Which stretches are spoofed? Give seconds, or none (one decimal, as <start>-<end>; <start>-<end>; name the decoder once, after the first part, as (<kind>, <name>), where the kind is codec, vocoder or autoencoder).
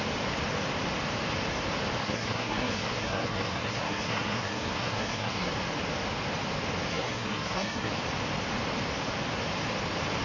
2.0-5.5 (codec, SNAC); 6.9-7.9